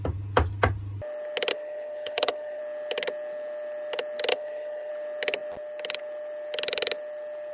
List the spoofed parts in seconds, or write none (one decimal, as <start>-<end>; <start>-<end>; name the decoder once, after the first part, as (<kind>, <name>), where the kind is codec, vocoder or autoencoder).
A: 1.5-2.6 (codec, HILCodec); 4.3-4.9